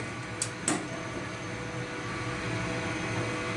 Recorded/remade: recorded